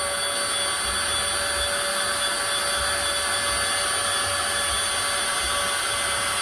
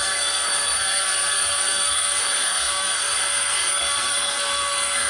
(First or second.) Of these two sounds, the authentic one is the first